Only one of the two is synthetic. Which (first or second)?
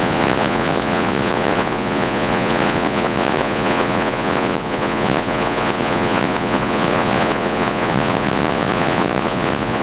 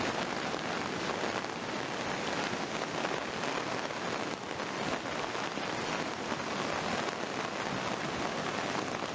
first